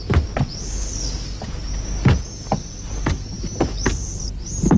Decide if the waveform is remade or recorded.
recorded